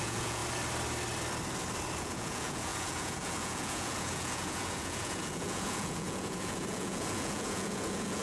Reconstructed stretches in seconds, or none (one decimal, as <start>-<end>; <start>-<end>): 0.0-0.4; 2.0-8.2